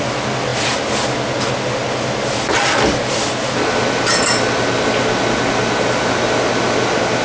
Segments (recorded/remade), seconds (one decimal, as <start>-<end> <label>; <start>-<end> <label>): 0.0-7.2 recorded